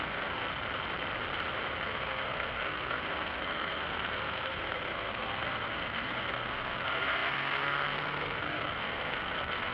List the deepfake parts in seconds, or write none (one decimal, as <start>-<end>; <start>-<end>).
0.0-0.5; 1.8-9.7